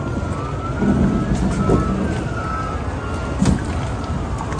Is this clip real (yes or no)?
yes